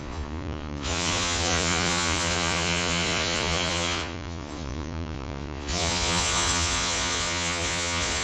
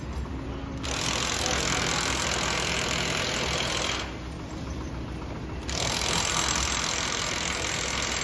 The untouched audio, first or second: second